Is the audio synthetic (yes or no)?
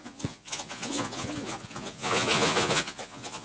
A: yes